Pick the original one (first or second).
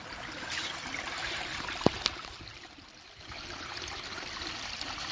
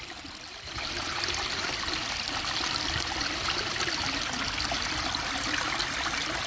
second